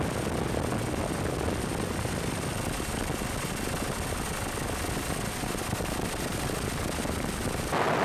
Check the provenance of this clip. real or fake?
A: real